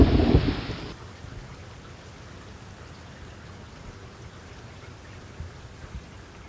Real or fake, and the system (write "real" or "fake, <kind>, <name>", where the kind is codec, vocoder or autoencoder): real